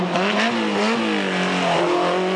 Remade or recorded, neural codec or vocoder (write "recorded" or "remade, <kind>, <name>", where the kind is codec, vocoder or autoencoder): recorded